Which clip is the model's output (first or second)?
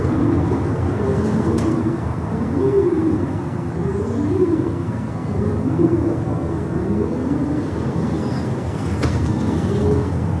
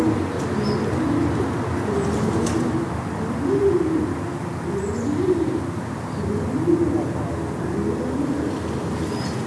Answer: first